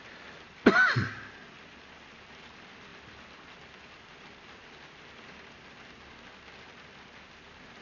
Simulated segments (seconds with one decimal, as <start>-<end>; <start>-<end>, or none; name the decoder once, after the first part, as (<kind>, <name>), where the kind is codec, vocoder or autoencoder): none